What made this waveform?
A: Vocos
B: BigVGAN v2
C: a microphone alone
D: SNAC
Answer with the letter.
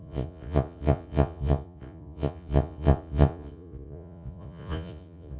A